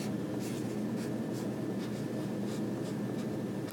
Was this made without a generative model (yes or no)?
yes